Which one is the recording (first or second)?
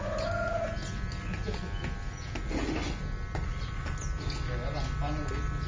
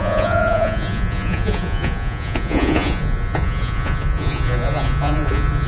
first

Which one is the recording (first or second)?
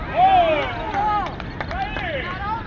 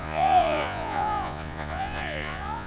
first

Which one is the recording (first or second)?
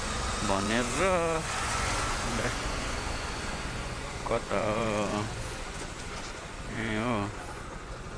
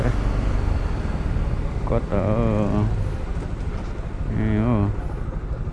second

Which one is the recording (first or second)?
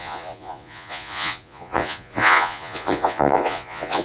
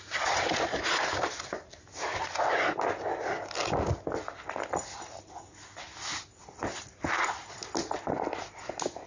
second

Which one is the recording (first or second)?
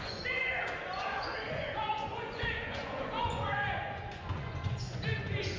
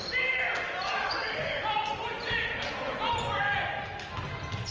second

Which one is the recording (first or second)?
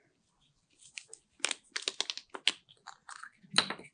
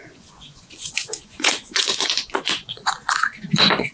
first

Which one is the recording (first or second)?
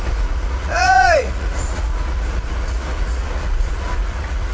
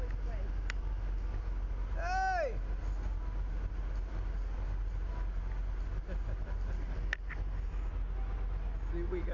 second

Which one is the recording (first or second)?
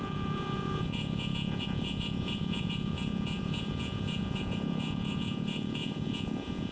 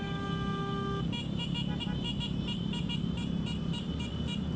second